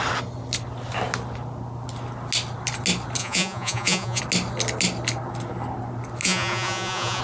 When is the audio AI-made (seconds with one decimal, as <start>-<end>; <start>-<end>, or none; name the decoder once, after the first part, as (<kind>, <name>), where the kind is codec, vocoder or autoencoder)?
3.2-4.2 (vocoder, Vocos); 6.2-7.2